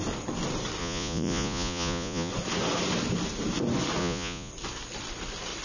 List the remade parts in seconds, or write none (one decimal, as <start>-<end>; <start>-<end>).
0.8-2.3; 4.0-4.5